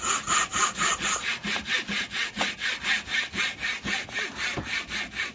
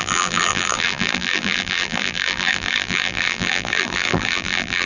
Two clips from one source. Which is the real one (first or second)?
first